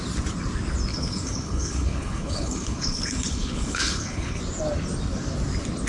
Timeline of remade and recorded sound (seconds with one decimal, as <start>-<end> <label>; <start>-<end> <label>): 0.0-0.9 recorded; 0.9-4.4 remade; 4.4-5.9 recorded